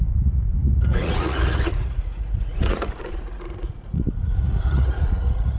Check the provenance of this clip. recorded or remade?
remade